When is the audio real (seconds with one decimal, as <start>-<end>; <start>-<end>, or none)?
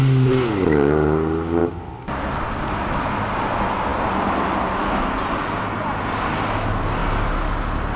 0.0-8.0